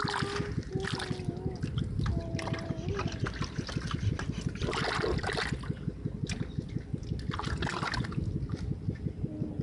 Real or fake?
real